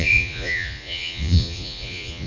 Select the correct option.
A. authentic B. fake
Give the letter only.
B